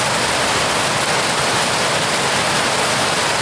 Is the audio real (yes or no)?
yes